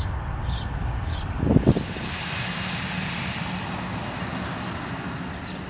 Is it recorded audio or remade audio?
recorded